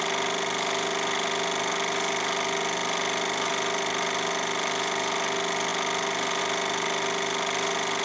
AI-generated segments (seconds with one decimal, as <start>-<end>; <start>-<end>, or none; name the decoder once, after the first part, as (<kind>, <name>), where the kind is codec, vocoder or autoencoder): none